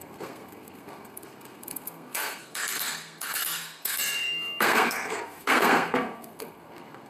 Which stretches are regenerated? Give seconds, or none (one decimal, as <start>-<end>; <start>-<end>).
0.0-7.1